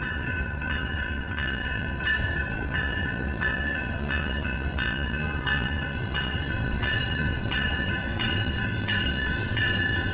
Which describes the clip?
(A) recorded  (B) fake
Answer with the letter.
B